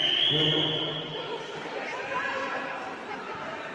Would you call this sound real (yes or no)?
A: yes